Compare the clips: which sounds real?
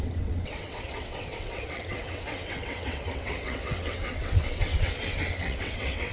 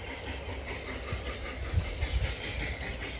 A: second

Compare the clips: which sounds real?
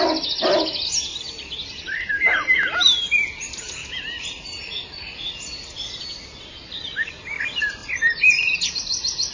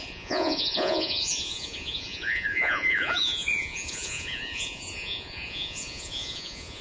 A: first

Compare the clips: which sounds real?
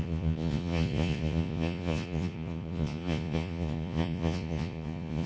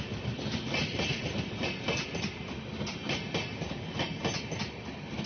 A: second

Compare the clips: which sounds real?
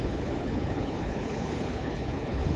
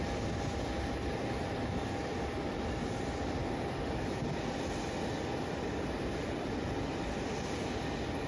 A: second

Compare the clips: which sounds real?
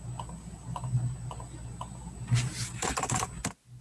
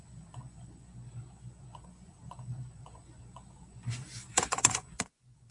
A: first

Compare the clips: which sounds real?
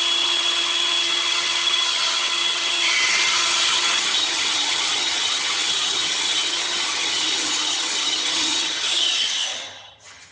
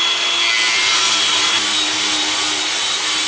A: second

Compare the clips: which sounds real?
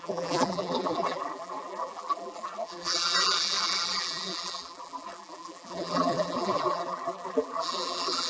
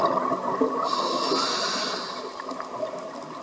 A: second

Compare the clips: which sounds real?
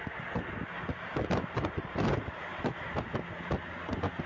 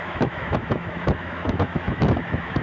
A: first